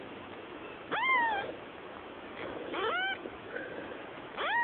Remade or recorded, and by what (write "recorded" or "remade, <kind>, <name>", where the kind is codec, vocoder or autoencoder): remade, autoencoder, DAC-VAE